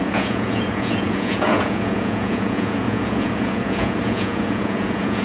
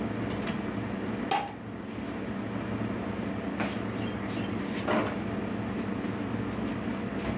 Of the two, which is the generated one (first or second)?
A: first